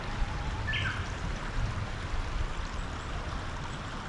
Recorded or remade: recorded